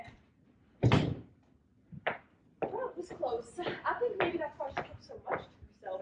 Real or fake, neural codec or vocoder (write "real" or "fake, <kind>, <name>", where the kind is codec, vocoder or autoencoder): fake, vocoder, BigVGAN v2